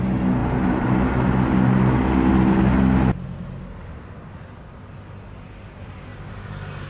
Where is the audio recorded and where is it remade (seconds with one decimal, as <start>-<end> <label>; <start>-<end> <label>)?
0.0-6.9 recorded